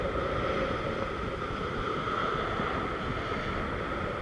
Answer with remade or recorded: recorded